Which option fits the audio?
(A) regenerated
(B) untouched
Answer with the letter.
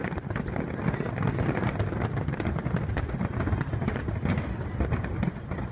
B